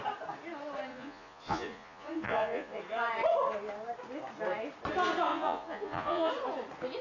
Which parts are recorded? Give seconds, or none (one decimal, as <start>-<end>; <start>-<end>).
0.0-0.9; 2.8-5.3; 6.3-7.0